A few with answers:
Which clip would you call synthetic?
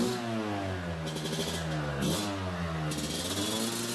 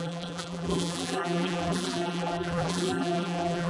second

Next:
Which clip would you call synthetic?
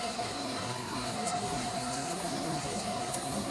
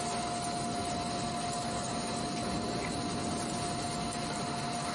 first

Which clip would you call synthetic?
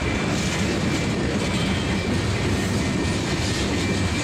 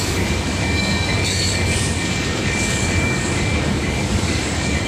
second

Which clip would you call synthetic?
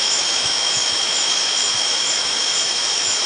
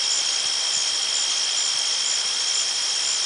first